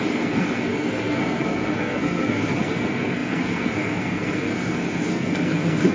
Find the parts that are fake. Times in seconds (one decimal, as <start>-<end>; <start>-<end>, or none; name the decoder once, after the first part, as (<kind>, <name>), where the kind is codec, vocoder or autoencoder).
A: 0.0-5.9 (codec, SNAC)